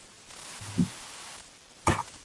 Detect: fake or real real